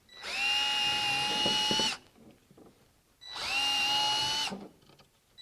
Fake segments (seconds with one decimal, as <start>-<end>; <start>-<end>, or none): none